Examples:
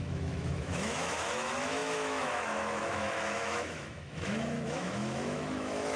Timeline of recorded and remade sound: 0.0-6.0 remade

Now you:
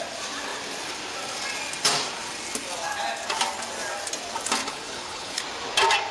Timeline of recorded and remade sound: 0.0-4.6 recorded; 4.6-5.4 remade; 5.4-6.1 recorded

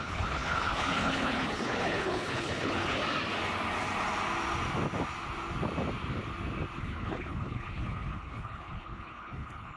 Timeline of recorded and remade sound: 0.0-3.0 remade; 3.0-6.8 recorded; 6.8-9.8 remade

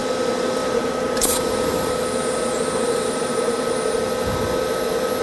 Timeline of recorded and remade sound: 0.0-0.6 recorded; 0.6-3.6 remade; 3.6-5.2 recorded

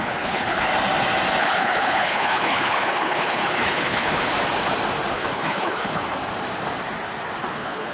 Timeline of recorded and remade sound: 0.0-0.7 remade; 0.7-1.4 recorded; 1.4-4.3 remade; 4.3-5.1 recorded; 5.1-6.0 remade; 6.0-7.5 recorded; 7.5-7.9 remade